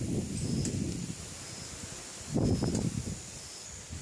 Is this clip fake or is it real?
real